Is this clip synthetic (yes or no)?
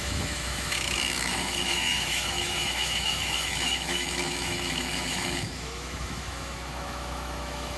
yes